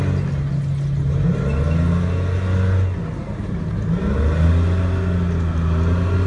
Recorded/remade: recorded